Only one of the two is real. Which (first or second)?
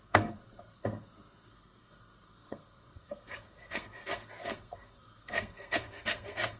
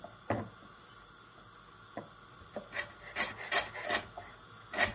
second